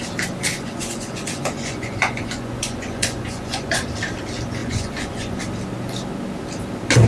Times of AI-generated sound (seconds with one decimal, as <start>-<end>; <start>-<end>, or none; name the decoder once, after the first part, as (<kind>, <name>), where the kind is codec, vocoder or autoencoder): 0.5-3.8 (vocoder, Vocos); 4.6-5.4